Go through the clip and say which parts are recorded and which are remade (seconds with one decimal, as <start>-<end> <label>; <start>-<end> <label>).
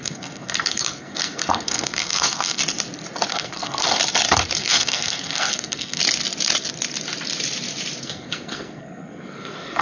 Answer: 0.0-2.6 remade; 2.6-3.3 recorded; 3.3-4.0 remade; 4.0-4.6 recorded; 4.6-6.0 remade; 6.0-8.0 recorded; 8.0-9.8 remade